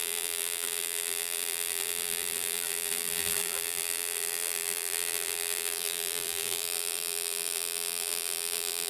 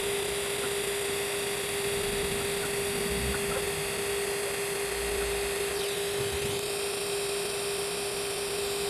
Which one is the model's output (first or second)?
first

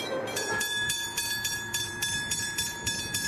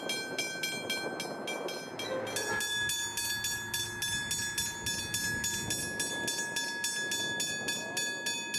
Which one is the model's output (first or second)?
first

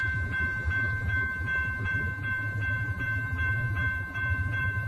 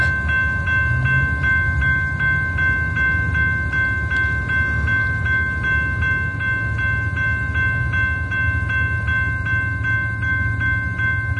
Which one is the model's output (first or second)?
first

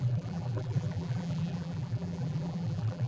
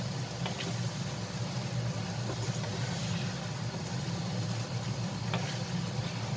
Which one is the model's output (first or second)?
first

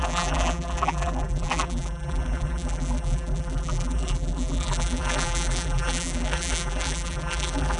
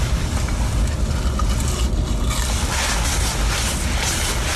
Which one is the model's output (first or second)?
first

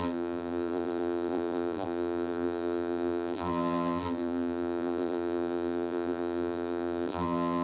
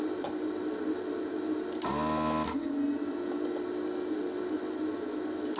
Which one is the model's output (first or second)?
first